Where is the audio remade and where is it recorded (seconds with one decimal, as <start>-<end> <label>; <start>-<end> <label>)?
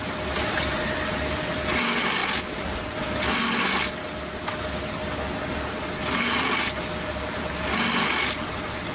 0.0-8.9 recorded